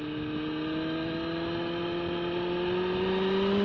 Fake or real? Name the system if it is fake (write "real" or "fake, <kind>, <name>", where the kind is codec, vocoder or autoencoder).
real